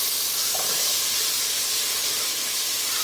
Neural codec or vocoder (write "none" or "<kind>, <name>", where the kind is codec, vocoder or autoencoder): none